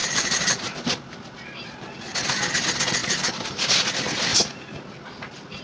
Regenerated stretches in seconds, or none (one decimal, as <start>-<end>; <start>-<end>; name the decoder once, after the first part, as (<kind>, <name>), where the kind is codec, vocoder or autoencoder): 0.0-0.9 (vocoder, BigVGAN v2); 3.0-3.6; 4.3-4.8

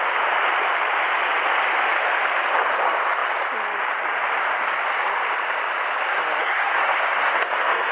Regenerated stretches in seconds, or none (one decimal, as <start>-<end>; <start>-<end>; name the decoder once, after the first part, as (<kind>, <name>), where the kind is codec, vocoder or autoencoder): 6.4-7.9 (codec, SNAC)

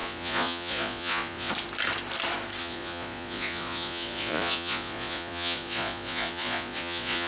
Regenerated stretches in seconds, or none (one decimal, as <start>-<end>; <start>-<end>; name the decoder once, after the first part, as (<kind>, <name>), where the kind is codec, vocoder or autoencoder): 0.0-1.5 (vocoder, Vocos); 2.6-7.3

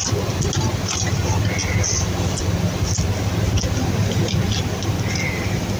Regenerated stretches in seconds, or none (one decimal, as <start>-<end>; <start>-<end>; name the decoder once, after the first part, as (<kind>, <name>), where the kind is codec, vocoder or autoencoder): none

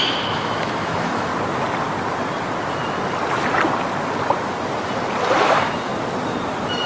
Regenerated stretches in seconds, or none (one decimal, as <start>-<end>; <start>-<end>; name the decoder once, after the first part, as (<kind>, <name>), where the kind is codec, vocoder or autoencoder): 0.0-1.3 (autoencoder, DAC-VAE); 5.4-5.9

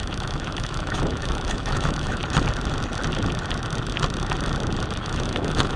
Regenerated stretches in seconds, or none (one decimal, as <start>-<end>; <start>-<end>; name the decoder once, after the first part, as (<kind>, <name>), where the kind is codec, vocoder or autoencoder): 0.0-2.2 (autoencoder, DAC-VAE); 5.0-5.8